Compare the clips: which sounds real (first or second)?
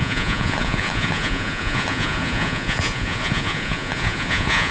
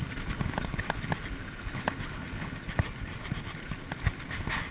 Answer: second